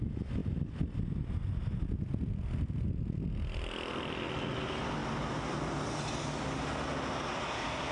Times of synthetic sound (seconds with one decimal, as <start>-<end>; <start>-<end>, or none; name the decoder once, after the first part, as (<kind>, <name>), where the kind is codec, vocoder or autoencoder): none